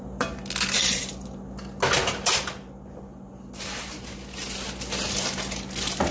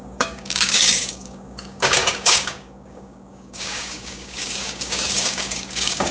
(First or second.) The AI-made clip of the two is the second